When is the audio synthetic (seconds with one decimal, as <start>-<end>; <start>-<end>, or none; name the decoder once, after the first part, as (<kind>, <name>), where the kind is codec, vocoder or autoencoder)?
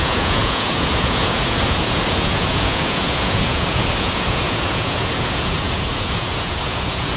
0.0-7.2 (vocoder, Vocos)